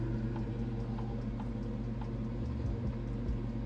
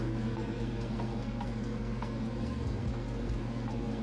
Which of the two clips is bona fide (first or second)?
first